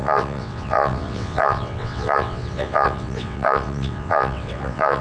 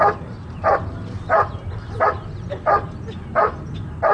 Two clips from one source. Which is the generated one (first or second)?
first